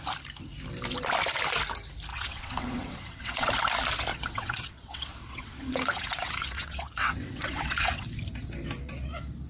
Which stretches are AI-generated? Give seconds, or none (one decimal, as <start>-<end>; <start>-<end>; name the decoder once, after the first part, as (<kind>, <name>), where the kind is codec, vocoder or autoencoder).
2.1-3.5 (vocoder, WaveNeXt); 4.1-8.1